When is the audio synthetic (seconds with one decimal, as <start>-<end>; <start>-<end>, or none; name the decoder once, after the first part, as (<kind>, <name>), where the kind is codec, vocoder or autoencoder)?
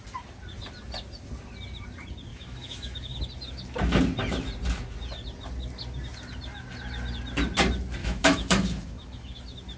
2.3-3.2 (autoencoder, DAC-VAE); 8.0-9.4